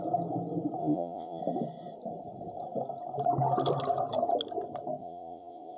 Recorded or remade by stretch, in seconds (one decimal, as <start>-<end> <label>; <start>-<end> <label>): 0.0-0.8 recorded; 0.8-1.4 remade; 1.4-5.0 recorded; 5.0-5.8 remade